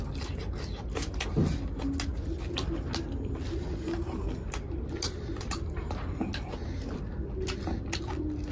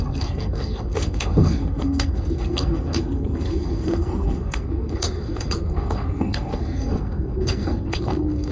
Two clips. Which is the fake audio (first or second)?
second